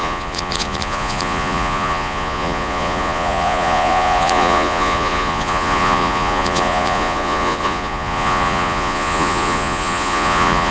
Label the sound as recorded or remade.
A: remade